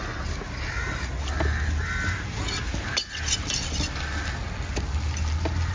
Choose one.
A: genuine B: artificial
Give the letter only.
A